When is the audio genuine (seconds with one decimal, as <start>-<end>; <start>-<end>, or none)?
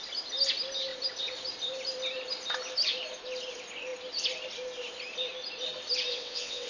0.0-6.1